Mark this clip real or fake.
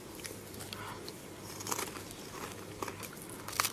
real